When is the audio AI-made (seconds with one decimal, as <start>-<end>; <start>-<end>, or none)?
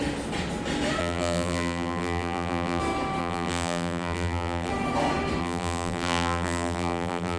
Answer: 1.0-2.8; 3.2-4.7; 5.4-7.4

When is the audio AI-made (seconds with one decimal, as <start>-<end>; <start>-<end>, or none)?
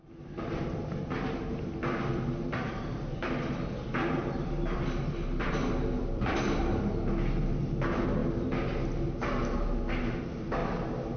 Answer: 0.0-6.6; 7.6-8.2; 10.2-11.2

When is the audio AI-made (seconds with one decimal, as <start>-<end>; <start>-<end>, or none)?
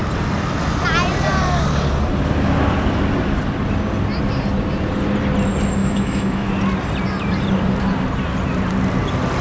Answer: 5.8-6.5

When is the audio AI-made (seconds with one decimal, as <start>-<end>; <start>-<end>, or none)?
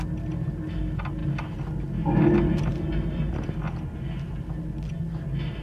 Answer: none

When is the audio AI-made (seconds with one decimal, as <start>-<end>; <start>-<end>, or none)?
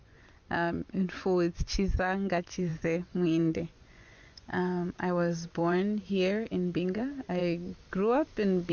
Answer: 0.0-7.4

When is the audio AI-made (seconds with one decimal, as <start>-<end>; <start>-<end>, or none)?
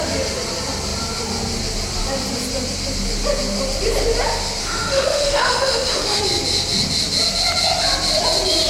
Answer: 4.6-6.2